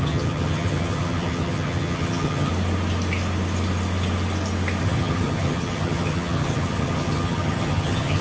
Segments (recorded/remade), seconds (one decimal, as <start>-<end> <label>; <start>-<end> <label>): 0.0-2.5 remade; 2.5-4.8 recorded; 4.8-8.2 remade